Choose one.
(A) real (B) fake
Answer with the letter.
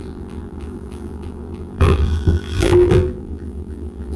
B